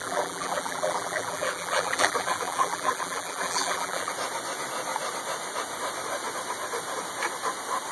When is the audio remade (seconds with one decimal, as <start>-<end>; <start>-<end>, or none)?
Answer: 0.0-4.1